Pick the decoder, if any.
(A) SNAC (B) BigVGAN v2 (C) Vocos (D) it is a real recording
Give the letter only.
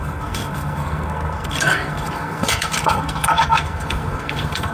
A